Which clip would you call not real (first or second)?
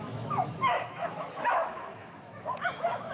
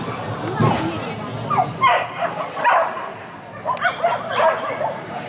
first